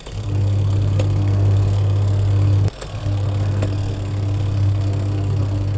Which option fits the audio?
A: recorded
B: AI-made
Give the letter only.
B